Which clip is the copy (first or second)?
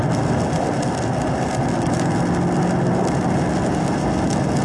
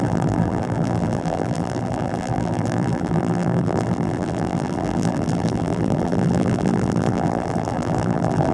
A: second